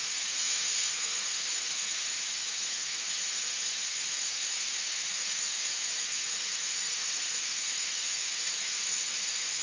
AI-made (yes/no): yes